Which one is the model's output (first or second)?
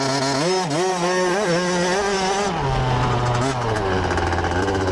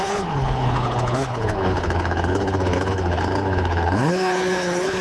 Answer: second